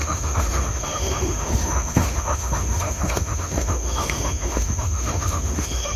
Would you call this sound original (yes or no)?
no